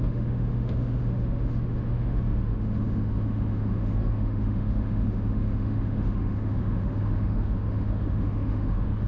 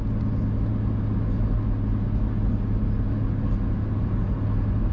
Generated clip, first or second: first